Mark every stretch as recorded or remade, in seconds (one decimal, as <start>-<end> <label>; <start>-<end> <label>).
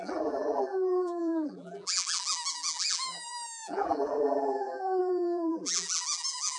0.0-6.6 remade